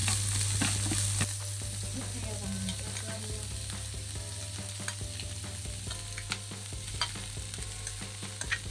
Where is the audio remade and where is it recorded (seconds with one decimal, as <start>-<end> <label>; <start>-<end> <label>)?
0.0-8.7 recorded